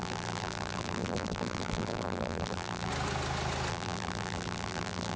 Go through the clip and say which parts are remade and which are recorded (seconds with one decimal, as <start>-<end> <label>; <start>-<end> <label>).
0.0-2.9 remade; 2.9-3.7 recorded; 3.7-5.2 remade

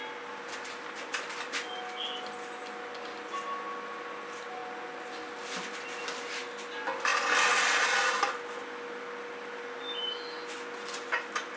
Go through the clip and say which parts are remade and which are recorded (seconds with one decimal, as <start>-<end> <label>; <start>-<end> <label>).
0.0-11.6 recorded

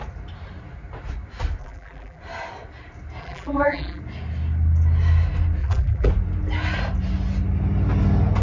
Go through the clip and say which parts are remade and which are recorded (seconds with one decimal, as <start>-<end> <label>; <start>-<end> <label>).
0.0-1.6 recorded; 1.6-2.2 remade; 2.2-3.2 recorded; 3.2-4.0 remade; 4.0-5.6 recorded; 5.6-6.1 remade; 6.1-8.4 recorded

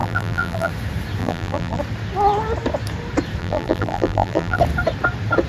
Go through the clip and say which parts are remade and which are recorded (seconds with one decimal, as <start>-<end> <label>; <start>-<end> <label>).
0.0-0.7 remade; 0.7-1.2 recorded; 1.2-1.8 remade; 1.8-3.4 recorded; 3.4-4.6 remade; 4.6-5.5 recorded